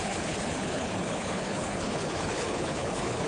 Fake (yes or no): yes